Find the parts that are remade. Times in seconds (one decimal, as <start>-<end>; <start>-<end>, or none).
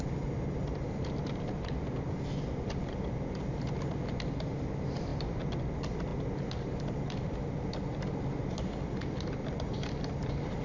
none